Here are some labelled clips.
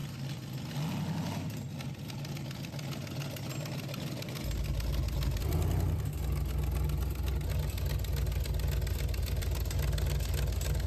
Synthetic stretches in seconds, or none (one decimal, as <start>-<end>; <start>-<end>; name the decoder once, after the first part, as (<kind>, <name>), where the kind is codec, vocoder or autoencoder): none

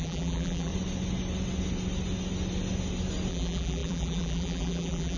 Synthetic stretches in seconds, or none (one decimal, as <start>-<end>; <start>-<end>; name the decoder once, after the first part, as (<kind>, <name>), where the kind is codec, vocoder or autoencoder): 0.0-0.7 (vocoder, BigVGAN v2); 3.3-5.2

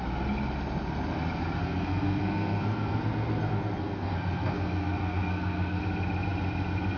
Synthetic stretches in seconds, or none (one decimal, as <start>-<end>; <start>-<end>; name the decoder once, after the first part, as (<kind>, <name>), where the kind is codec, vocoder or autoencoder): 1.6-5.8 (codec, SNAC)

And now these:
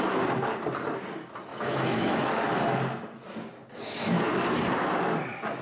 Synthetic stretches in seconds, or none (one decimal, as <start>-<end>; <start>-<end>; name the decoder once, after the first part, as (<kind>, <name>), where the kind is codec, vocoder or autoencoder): 1.5-2.4 (autoencoder, DAC-VAE)

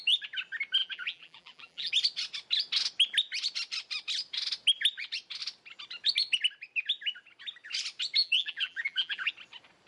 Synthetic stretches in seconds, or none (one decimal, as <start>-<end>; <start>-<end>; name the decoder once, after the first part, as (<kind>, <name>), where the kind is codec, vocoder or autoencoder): 0.8-1.9 (vocoder, BigVGAN v2); 8.2-9.3

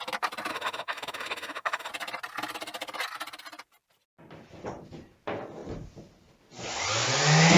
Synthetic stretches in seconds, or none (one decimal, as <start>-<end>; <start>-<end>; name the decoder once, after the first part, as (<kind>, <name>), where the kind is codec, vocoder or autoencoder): 0.5-1.9 (autoencoder, DAC-VAE)